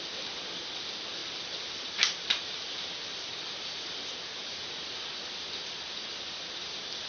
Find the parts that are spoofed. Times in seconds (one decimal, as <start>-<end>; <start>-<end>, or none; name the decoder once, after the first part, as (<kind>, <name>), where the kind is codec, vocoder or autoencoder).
1.2-5.5 (vocoder, BigVGAN v2)